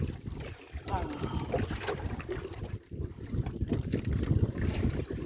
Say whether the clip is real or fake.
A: fake